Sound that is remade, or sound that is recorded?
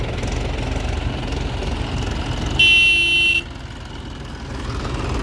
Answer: recorded